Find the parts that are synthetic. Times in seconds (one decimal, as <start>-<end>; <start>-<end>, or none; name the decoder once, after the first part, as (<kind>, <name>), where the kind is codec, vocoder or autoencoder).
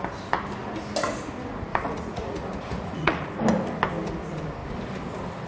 1.7-3.3 (vocoder, Vocos)